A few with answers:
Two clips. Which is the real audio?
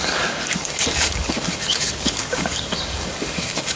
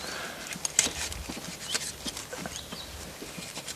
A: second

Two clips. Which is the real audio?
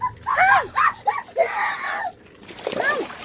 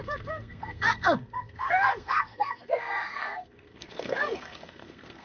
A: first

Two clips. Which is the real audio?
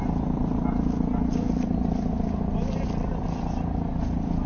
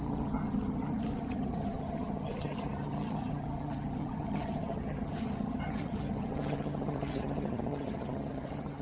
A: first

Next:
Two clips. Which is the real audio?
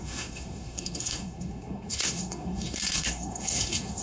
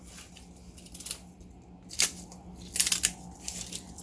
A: second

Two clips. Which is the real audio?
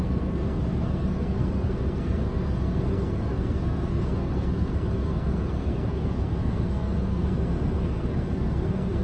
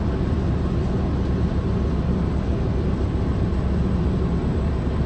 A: second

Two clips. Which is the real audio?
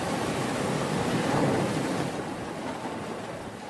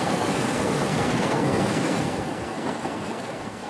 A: first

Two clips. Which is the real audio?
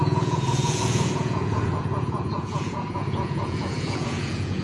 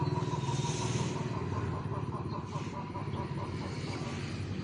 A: second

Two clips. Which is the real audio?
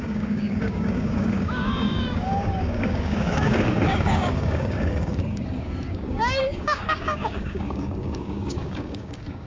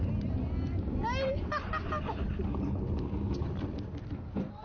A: second